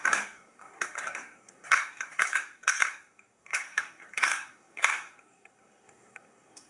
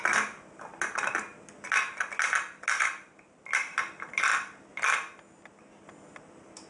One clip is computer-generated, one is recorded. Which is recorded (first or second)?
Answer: second